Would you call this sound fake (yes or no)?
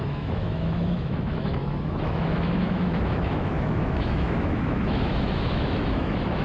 yes